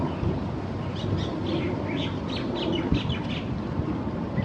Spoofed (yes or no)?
no